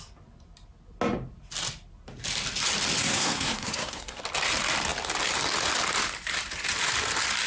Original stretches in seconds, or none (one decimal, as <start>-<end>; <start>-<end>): 0.0-3.0; 4.2-7.5

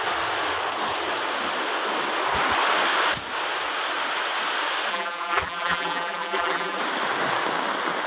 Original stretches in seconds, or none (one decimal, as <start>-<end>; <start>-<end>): 0.0-4.9; 6.8-8.1